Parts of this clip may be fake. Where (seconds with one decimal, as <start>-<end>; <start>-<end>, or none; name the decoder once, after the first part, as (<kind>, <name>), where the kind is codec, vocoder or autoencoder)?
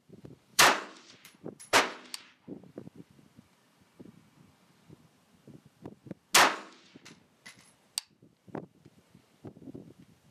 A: 0.5-1.8 (vocoder, BigVGAN v2)